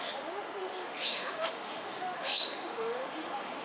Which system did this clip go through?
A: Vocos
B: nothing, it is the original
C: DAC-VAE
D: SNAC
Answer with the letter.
C